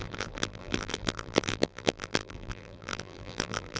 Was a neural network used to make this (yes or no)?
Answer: yes